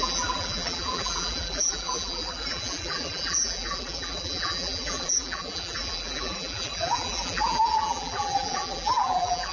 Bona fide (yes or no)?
no